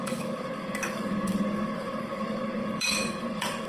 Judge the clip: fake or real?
fake